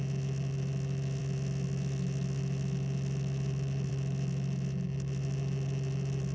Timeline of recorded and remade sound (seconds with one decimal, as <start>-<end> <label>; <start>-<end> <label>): 0.0-6.3 recorded